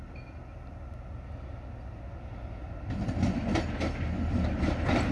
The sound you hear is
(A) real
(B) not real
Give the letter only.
A